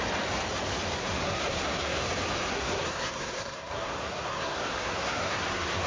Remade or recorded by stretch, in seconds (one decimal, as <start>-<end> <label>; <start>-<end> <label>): 0.0-1.0 recorded; 1.0-2.0 remade; 2.0-2.5 recorded; 2.5-5.9 remade